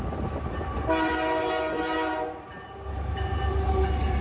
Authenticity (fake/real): real